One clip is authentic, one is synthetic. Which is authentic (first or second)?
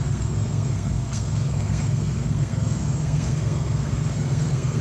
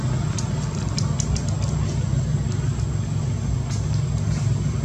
second